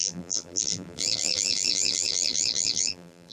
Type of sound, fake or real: fake